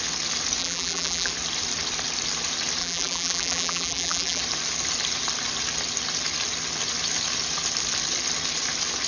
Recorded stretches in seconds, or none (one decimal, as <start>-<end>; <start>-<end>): 0.0-0.6; 1.3-2.8; 4.4-9.1